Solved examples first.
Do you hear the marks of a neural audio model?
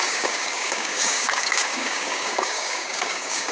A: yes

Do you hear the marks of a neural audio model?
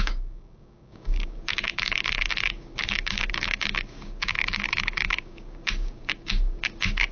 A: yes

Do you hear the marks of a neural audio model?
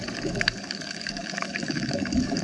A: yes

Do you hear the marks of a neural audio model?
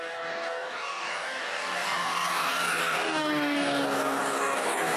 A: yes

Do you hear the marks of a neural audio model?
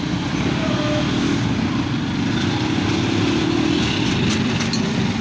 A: no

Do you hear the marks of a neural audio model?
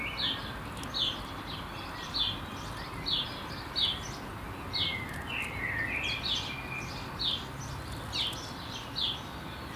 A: no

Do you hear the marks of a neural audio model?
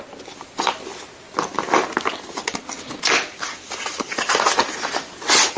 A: no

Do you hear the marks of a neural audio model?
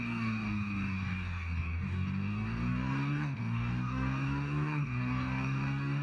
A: yes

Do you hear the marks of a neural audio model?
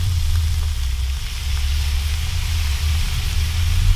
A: no